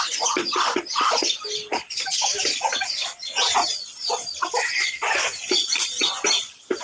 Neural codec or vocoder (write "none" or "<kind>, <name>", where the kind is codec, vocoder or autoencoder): none